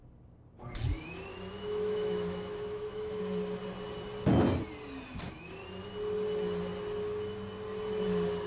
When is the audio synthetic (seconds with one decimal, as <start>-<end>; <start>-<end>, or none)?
1.3-3.2